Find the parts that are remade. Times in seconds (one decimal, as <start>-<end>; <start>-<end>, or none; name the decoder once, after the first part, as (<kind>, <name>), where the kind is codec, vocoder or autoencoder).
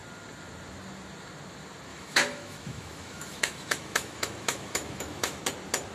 1.9-5.4 (autoencoder, DAC-VAE)